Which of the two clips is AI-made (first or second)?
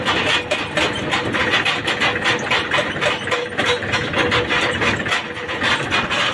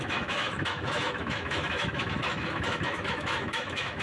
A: second